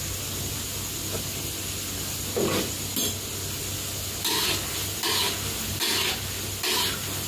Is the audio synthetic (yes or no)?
no